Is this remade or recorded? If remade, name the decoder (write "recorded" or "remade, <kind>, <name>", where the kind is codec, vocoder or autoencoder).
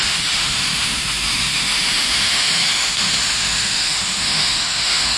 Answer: remade, autoencoder, DAC-VAE